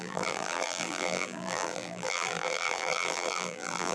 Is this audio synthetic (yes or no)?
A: yes